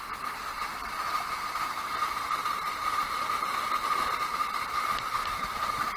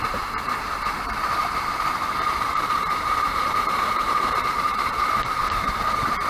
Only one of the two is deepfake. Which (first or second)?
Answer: second